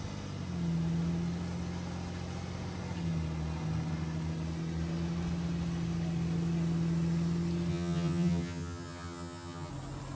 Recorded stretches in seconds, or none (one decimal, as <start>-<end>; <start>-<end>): 0.0-7.7; 9.7-10.2

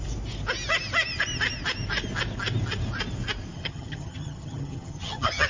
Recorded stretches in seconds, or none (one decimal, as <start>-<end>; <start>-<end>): 0.0-3.5

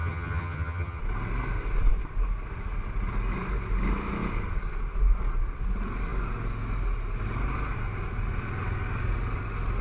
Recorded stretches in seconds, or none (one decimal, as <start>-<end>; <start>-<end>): 1.0-9.8

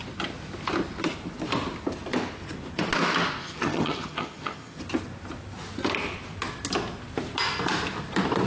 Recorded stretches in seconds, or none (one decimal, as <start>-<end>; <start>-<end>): 0.0-3.4; 4.8-8.5

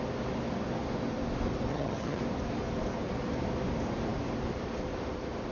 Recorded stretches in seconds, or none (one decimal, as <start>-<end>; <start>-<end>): 0.0-1.7; 2.2-5.5